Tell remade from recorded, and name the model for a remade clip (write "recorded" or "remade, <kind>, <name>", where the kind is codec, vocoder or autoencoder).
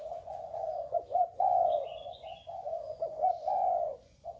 remade, vocoder, Vocos